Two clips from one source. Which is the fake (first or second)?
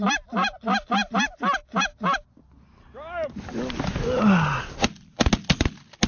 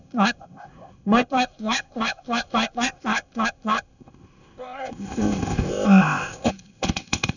second